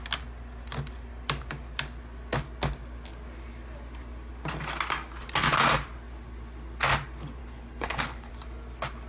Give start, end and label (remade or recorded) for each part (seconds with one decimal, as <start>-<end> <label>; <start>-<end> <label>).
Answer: 0.0-7.4 recorded; 7.4-8.3 remade; 8.3-9.1 recorded